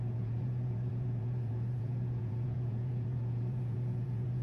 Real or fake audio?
fake